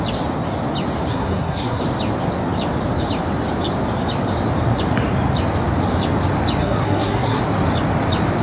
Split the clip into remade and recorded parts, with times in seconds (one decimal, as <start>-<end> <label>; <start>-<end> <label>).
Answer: 0.0-1.1 recorded; 1.1-1.8 remade; 1.8-6.6 recorded; 6.6-7.4 remade; 7.4-8.4 recorded